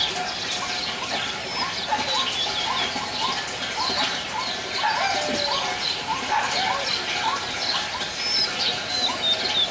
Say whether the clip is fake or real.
real